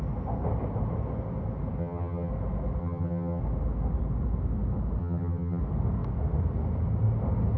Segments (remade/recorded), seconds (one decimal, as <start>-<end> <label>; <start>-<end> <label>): 0.0-1.8 recorded; 1.8-2.3 remade; 2.3-2.8 recorded; 2.8-3.4 remade; 3.4-5.0 recorded; 5.0-5.6 remade; 5.6-7.6 recorded